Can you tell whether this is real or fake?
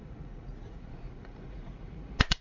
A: fake